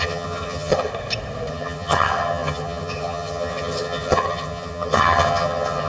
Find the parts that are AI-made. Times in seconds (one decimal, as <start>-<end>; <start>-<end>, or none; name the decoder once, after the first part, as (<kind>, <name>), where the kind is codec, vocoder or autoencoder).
0.0-0.9 (vocoder, HiFi-GAN); 1.5-5.9